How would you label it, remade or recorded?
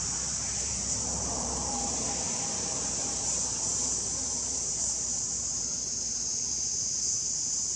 remade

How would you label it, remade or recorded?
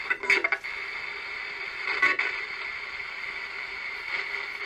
recorded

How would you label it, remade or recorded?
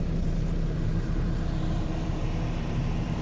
remade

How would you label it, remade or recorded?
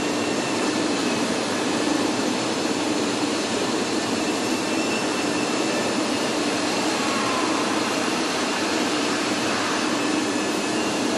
remade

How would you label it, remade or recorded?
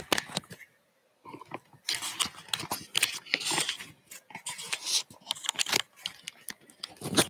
recorded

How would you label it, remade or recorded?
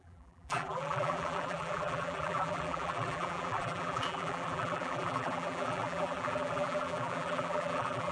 remade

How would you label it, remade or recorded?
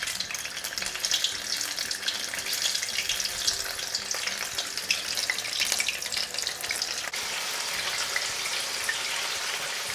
recorded